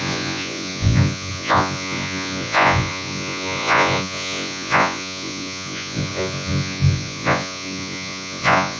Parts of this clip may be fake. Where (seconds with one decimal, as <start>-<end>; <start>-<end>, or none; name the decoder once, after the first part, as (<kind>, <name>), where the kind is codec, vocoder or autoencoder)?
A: 0.0-8.8 (vocoder, Vocos)